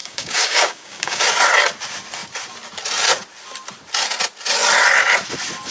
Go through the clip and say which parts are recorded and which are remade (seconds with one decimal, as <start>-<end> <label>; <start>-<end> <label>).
0.0-1.3 remade; 1.3-5.7 recorded